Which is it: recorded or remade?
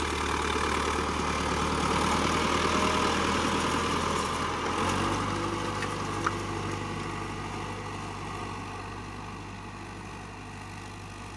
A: recorded